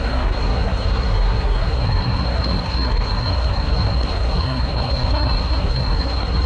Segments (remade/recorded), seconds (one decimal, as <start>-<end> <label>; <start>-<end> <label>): 0.0-6.5 remade